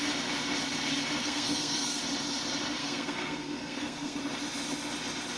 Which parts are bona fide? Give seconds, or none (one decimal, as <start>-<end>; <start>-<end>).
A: 0.0-1.2; 2.0-2.8; 4.2-5.4